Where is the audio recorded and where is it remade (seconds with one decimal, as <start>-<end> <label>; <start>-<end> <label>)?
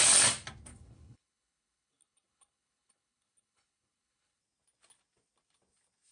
0.0-0.7 recorded; 0.7-4.4 remade; 4.4-6.1 recorded